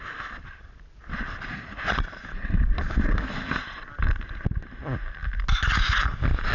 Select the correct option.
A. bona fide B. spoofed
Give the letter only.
A